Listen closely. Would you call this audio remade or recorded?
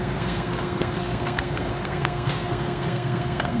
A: remade